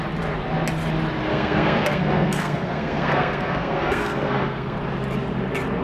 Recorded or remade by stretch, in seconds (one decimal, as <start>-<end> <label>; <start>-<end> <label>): 0.0-1.3 recorded; 1.3-4.8 remade; 4.8-5.8 recorded